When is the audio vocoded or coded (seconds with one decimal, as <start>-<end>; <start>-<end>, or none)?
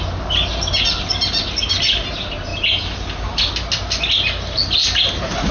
none